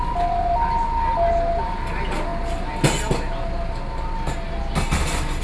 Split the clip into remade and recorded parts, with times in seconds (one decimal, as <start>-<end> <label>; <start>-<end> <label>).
0.0-5.4 recorded